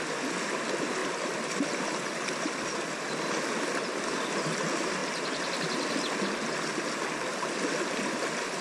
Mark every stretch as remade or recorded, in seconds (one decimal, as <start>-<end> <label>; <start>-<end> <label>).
0.0-8.6 recorded